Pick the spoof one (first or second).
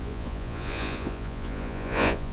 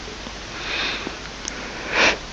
first